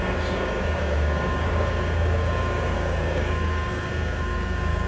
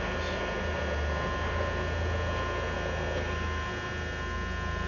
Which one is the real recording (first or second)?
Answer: second